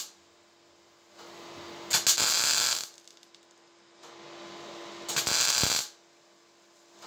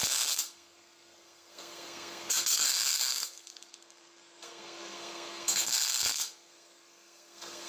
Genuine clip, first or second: first